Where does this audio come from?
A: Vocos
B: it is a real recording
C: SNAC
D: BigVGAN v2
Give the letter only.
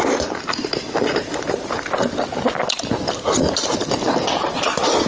B